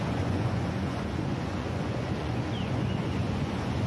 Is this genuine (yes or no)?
no